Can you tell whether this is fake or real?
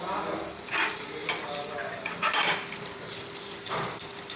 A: fake